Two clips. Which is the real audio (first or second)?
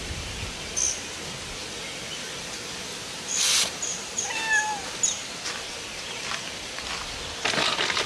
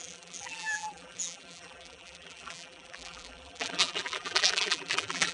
first